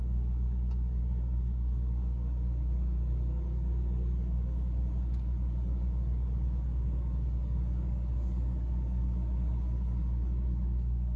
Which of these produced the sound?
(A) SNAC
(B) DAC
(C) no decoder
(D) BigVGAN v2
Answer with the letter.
B